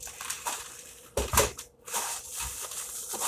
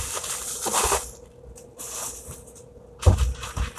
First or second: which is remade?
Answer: first